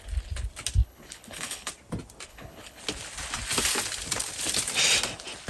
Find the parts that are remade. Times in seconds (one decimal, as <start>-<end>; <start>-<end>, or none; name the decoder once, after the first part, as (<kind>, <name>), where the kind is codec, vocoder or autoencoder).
0.8-1.7 (codec, HILCodec); 2.3-2.8